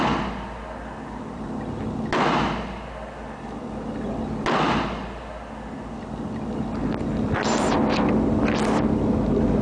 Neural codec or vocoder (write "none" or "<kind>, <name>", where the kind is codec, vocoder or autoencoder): none